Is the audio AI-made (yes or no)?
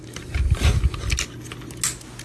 no